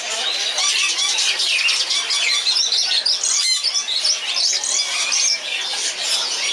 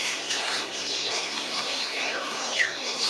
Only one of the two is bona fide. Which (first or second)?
first